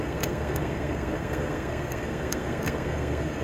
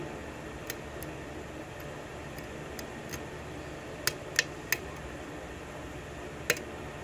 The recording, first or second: second